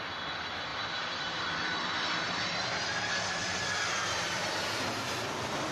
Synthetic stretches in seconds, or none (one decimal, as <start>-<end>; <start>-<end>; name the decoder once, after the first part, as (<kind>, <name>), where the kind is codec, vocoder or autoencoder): 0.7-4.1 (vocoder, BigVGAN v2)